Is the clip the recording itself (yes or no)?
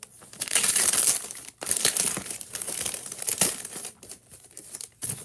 yes